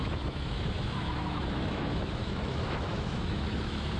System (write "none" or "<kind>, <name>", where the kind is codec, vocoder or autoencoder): autoencoder, DAC-VAE